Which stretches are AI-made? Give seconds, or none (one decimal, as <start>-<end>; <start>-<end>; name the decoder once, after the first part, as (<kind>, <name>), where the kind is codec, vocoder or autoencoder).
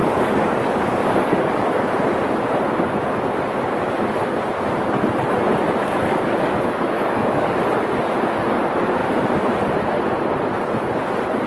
0.0-1.9 (codec, DAC); 5.8-7.6